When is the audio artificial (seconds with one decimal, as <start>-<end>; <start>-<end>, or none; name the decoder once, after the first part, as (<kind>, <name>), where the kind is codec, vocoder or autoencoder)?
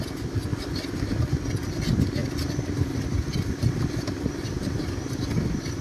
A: none